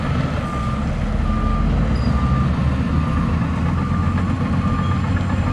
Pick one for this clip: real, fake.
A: real